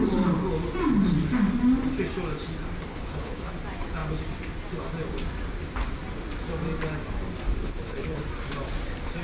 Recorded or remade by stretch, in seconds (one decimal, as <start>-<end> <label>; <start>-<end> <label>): 0.0-2.9 recorded; 2.9-3.5 remade; 3.5-7.6 recorded; 7.6-8.2 remade; 8.2-9.2 recorded